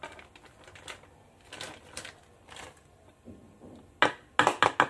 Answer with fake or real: real